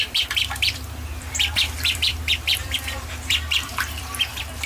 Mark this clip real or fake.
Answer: fake